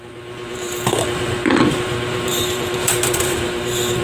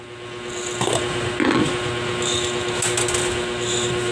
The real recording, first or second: second